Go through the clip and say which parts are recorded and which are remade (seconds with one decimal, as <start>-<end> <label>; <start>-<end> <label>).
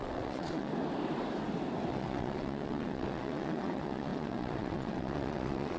0.0-0.7 remade; 0.7-1.9 recorded; 1.9-5.8 remade